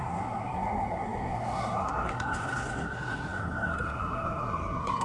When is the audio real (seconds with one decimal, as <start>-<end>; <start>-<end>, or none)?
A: none

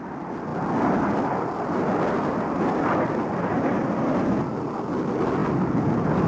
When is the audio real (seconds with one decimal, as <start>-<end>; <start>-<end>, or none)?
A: 0.0-6.3

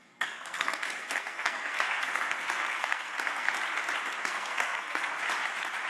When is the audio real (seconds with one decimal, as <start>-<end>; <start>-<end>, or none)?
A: 3.5-4.2; 5.2-5.9

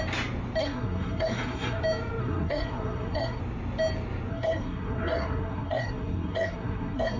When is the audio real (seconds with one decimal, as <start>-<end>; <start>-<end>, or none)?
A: 0.0-0.6; 1.8-2.2; 3.4-4.3

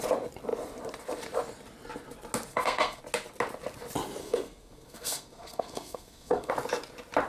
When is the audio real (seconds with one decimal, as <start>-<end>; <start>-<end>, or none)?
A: 0.0-2.5; 3.0-4.2; 6.5-7.3

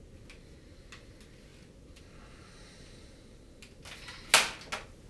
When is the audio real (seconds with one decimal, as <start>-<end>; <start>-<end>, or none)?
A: 0.0-5.1

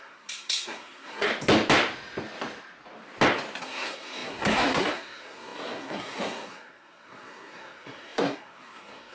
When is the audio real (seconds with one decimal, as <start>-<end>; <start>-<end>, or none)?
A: 1.3-3.6

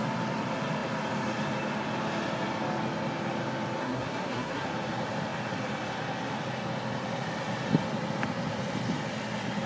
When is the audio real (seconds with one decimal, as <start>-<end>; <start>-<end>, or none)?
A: 0.0-3.8; 4.7-9.7